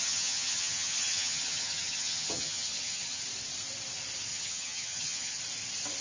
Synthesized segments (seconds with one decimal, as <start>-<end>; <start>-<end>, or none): 0.0-3.2; 4.3-5.4